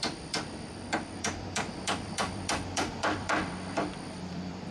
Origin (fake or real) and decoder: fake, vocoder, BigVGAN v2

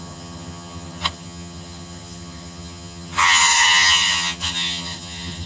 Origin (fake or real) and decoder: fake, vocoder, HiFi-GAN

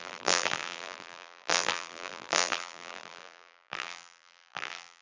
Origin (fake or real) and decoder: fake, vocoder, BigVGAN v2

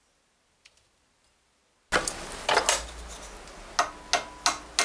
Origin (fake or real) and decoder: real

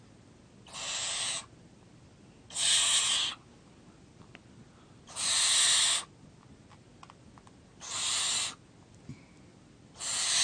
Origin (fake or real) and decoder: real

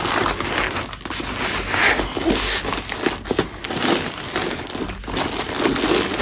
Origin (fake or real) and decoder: real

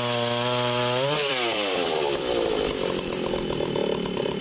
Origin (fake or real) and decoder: fake, vocoder, BigVGAN v2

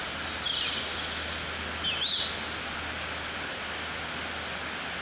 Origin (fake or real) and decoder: real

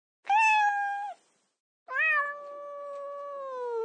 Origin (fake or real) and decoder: real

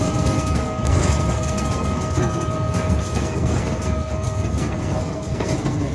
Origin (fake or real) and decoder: fake, codec, SNAC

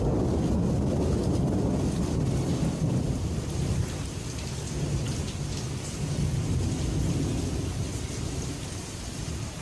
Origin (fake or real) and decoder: real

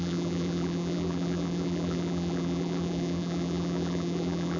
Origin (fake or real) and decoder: fake, vocoder, BigVGAN v2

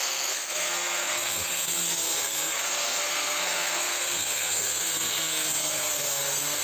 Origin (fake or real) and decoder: fake, codec, SNAC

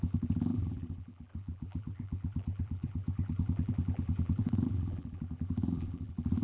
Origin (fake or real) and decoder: fake, vocoder, BigVGAN v2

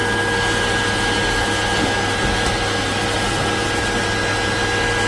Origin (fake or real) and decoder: real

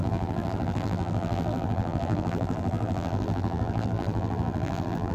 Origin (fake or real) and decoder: fake, vocoder, BigVGAN v2